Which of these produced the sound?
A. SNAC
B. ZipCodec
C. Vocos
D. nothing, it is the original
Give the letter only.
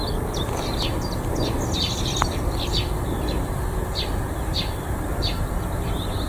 D